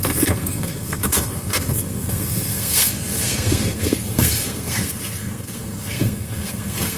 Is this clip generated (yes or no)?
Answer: yes